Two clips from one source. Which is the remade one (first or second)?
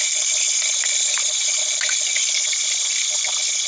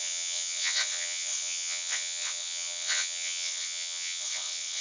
second